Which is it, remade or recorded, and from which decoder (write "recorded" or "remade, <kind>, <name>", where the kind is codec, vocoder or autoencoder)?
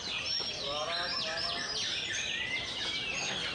recorded